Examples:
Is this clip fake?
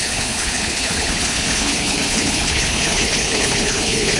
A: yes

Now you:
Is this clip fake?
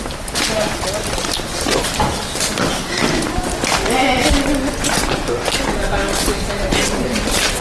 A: no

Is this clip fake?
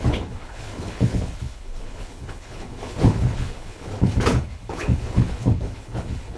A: yes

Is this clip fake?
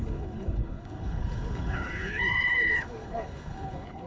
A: yes